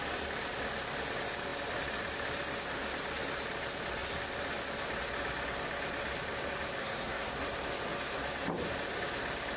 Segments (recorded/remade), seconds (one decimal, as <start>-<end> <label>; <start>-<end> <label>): 0.0-6.8 recorded; 6.8-7.3 remade; 7.3-9.6 recorded